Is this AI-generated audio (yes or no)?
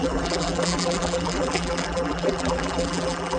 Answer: yes